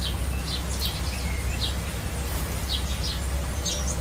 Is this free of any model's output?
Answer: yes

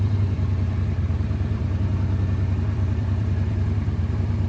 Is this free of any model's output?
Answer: no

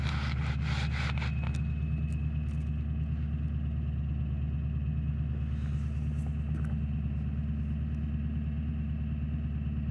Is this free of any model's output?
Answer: yes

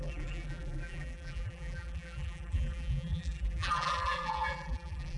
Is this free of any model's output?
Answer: no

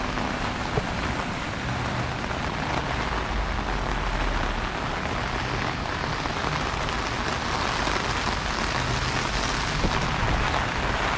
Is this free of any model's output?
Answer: yes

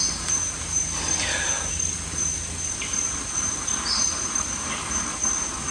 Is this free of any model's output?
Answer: no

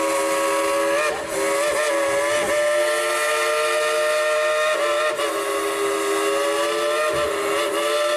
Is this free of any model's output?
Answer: yes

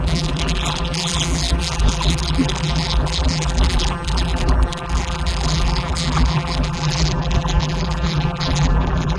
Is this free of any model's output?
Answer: no